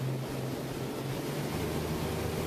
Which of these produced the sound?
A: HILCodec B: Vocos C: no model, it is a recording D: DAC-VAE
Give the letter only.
C